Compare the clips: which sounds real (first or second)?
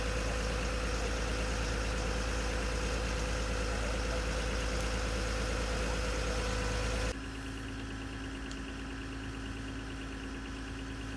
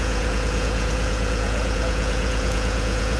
first